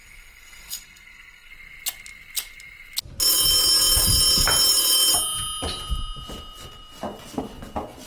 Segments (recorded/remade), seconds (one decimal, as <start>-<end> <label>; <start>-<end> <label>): 0.0-1.5 remade; 1.5-8.1 recorded